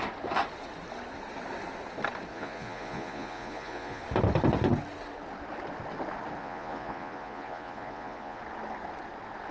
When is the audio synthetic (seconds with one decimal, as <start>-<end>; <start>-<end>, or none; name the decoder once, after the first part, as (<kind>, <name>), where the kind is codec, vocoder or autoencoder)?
2.3-4.0 (vocoder, Vocos); 6.4-8.4